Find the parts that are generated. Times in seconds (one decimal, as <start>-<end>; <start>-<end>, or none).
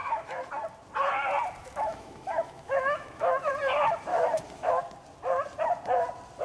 0.0-0.5; 1.6-3.5; 4.1-4.8